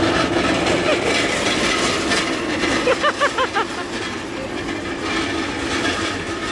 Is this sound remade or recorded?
recorded